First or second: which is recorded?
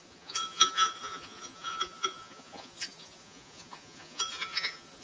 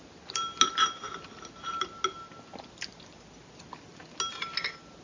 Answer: second